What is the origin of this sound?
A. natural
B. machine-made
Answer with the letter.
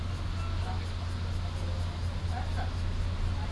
A